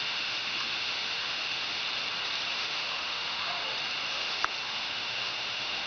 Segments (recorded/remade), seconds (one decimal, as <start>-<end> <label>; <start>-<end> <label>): 0.0-1.8 remade; 1.8-2.5 recorded; 2.5-3.5 remade; 3.5-4.1 recorded; 4.1-5.9 remade